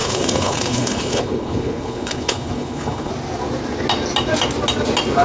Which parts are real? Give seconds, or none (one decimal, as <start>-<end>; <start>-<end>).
3.1-5.2